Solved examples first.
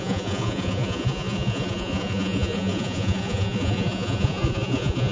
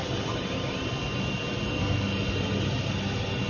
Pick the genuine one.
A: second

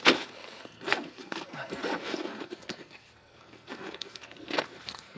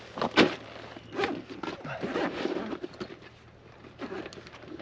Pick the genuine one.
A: second